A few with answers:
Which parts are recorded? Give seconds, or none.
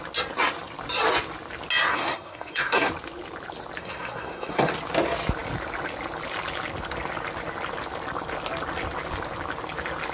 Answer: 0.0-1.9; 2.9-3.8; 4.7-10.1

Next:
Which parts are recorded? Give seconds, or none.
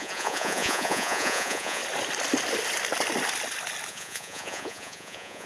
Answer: 1.8-3.9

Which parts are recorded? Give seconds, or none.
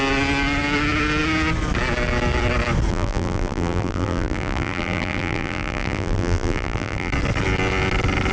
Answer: 0.0-2.9; 7.1-8.3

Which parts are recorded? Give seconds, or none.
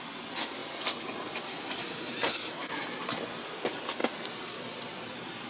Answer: 0.0-5.5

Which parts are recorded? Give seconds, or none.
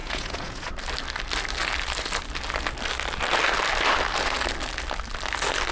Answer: 0.7-5.7